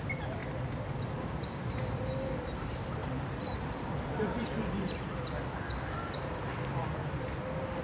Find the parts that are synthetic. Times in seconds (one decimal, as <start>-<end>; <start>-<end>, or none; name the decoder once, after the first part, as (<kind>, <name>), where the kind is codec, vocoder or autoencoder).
3.0-5.1 (vocoder, BigVGAN v2)